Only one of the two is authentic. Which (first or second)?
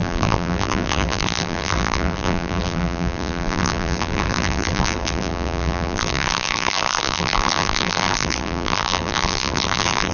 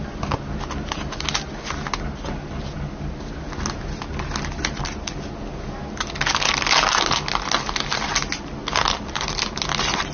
second